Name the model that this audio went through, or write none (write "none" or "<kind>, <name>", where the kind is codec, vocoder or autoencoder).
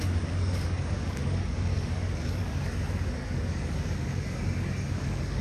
codec, DAC